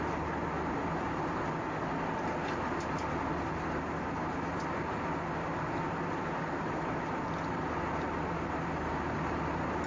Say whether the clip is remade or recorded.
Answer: recorded